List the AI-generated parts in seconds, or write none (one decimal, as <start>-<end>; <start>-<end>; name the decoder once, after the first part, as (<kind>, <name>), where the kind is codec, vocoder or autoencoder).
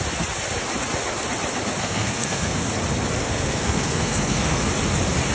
1.8-2.7 (codec, SNAC); 3.2-4.6